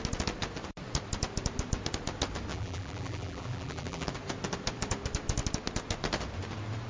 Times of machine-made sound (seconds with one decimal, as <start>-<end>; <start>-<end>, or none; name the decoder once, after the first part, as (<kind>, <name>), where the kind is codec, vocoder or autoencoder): 2.5-4.1 (vocoder, BigVGAN v2)